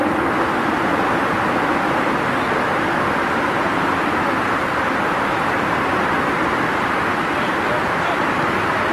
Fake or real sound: real